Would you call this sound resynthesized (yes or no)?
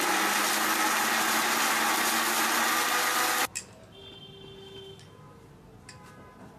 no